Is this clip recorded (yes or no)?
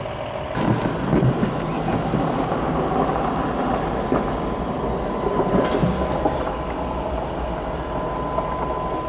yes